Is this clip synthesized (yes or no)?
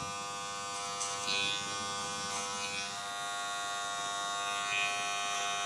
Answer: no